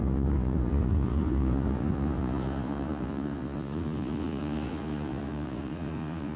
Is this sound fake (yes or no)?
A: yes